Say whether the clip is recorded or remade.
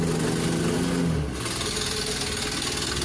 recorded